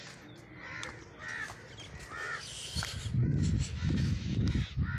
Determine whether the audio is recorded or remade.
recorded